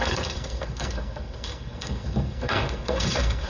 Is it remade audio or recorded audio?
remade